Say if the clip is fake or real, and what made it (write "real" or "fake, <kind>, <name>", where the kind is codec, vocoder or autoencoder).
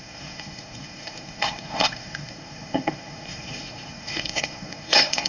fake, codec, SNAC